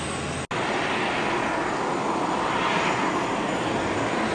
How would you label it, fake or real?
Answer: real